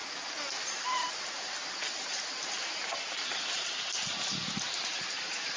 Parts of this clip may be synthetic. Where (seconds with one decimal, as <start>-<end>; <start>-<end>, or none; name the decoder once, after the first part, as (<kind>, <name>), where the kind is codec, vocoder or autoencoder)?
none